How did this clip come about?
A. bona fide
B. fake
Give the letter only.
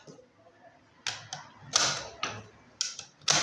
A